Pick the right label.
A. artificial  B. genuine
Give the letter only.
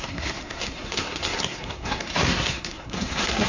A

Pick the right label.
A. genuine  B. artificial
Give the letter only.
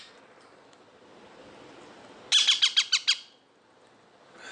A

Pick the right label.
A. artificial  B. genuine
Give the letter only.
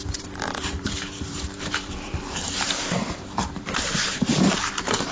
A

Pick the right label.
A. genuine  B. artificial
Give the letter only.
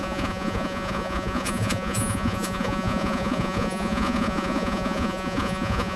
B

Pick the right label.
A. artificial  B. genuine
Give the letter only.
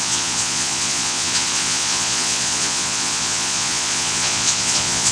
A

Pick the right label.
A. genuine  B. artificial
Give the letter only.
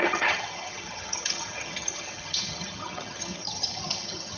B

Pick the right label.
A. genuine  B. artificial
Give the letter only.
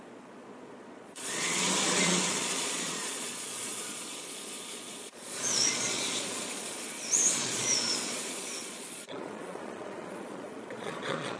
B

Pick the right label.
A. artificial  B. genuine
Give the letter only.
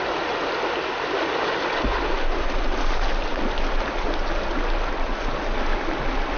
B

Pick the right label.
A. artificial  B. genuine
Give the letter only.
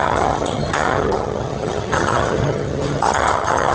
A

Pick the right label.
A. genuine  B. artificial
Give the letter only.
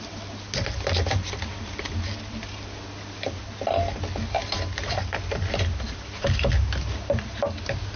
A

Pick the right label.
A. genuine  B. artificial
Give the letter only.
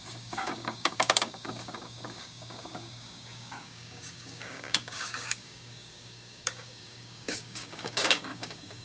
B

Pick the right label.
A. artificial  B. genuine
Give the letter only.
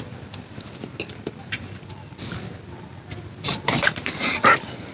B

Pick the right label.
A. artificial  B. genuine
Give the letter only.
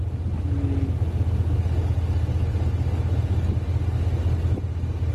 B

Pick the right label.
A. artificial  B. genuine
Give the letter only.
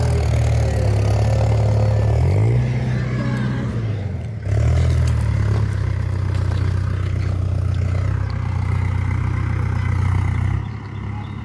B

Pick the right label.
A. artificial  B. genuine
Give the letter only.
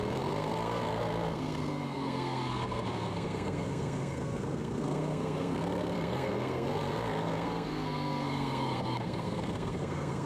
A